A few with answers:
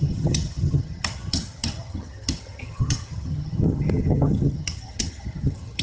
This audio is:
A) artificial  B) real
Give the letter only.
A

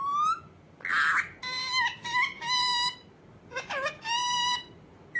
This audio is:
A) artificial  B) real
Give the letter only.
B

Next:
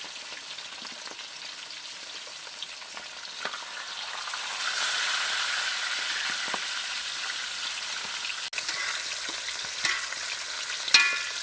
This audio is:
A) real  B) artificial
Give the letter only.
A